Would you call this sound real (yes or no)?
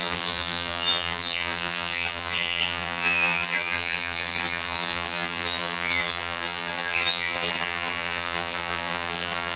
no